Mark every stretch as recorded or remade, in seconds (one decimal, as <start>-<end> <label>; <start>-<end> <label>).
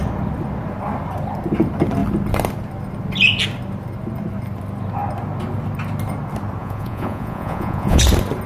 0.0-6.6 recorded; 6.6-8.0 remade; 8.0-8.5 recorded